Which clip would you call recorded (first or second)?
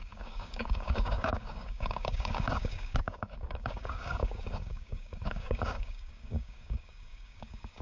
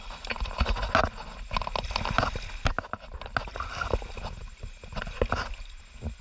second